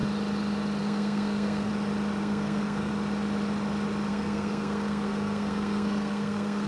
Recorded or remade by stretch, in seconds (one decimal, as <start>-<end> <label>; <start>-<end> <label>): 0.0-0.8 recorded; 0.8-1.7 remade; 1.7-2.2 recorded; 2.2-2.9 remade; 2.9-4.1 recorded; 4.1-6.7 remade